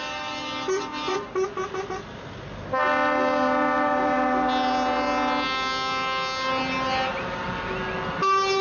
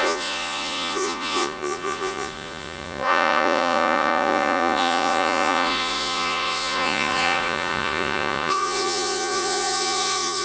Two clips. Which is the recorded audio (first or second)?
first